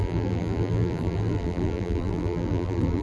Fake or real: fake